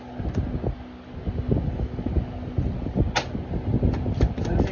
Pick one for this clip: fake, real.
real